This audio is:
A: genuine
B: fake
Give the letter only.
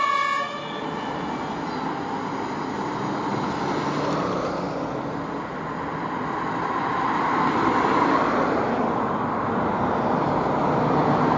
A